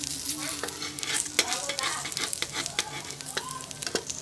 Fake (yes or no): no